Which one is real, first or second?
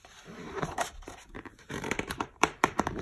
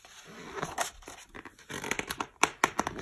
second